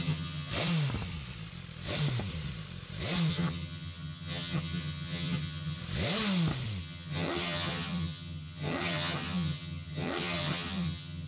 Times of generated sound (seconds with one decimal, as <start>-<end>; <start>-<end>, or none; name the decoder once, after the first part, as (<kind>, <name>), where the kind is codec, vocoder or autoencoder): 0.0-0.5 (vocoder, HiFi-GAN); 3.3-5.8; 6.8-11.3